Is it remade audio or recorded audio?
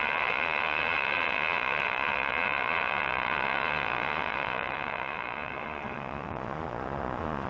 remade